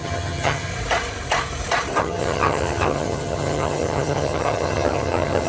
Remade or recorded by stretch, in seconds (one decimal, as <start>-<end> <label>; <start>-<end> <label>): 0.0-0.7 remade; 0.7-2.0 recorded; 2.0-5.5 remade